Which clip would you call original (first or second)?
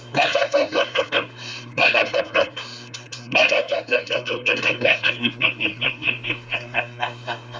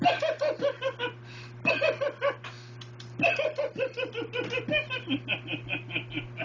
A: second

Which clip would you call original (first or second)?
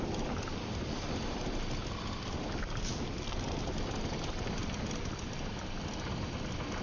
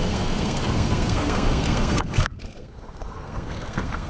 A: first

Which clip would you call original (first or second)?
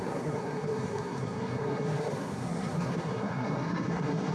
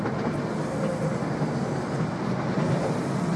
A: second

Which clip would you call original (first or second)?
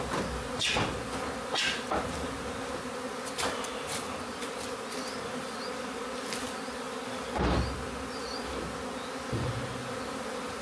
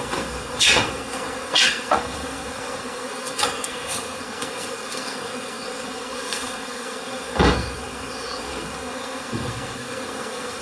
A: first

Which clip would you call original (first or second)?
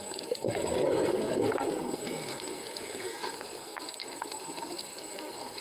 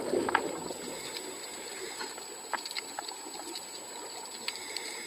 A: second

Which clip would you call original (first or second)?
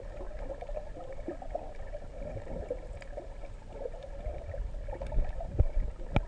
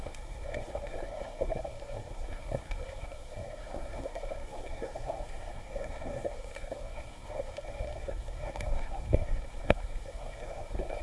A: first